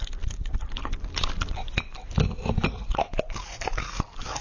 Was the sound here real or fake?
real